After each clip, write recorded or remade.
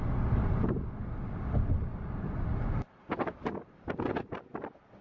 recorded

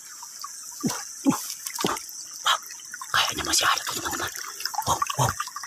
recorded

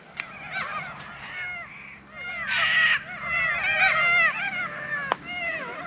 recorded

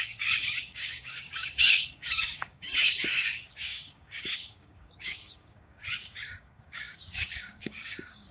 remade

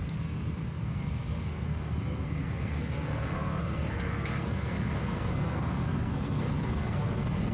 remade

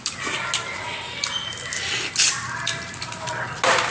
recorded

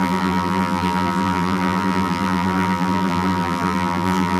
remade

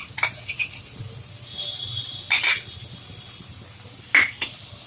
recorded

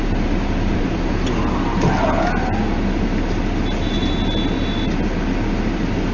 recorded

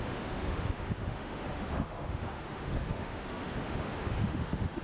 remade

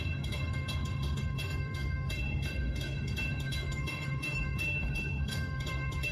remade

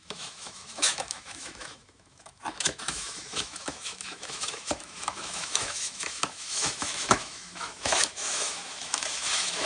remade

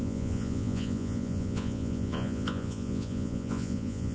remade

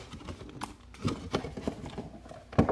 recorded